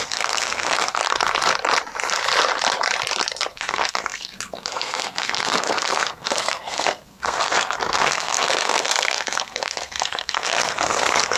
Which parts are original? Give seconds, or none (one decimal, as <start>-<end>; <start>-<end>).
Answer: 1.0-3.5